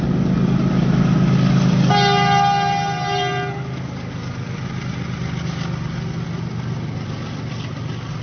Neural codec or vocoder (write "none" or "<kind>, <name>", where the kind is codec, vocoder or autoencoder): none